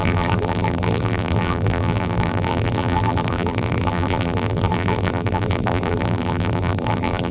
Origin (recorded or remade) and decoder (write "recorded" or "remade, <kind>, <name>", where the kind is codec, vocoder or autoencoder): remade, vocoder, BigVGAN v2